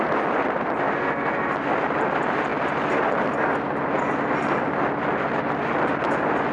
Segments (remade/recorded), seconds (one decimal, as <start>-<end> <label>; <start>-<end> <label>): 0.0-6.5 recorded